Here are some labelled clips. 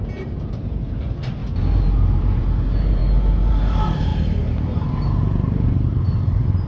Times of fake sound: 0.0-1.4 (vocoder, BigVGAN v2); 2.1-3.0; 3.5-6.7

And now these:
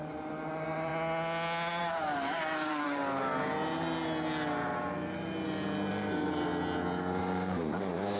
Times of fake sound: 0.0-0.9 (vocoder, BigVGAN v2); 1.8-3.0; 5.9-6.5; 7.2-8.2

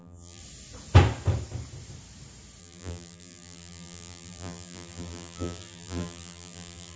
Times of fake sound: 0.0-0.4 (vocoder, BigVGAN v2); 2.6-7.0

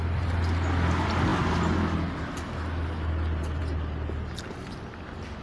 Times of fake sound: none

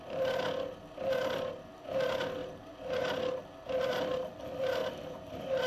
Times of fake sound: 2.4-4.1 (vocoder, BigVGAN v2); 4.8-5.7

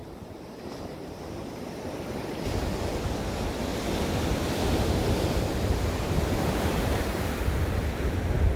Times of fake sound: 0.0-3.7 (vocoder, BigVGAN v2); 4.3-6.9; 7.5-8.6